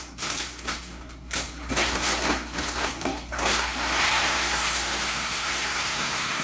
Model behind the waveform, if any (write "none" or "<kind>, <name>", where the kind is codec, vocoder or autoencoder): codec, SNAC